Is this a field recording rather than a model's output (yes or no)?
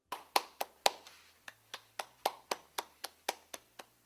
yes